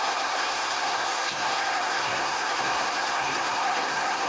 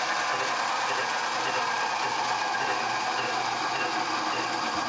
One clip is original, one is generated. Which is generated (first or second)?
first